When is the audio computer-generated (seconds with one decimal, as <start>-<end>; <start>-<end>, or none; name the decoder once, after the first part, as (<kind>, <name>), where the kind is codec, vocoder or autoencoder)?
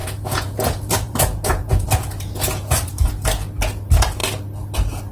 0.0-3.1 (vocoder, Vocos)